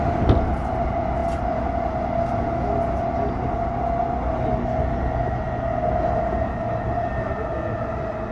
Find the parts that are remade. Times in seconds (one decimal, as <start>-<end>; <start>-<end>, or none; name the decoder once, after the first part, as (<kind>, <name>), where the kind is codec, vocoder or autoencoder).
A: none